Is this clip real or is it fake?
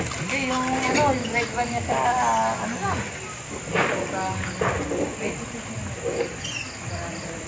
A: real